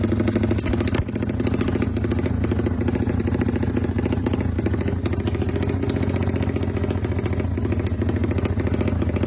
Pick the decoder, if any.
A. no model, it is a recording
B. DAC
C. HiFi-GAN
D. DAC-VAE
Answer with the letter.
A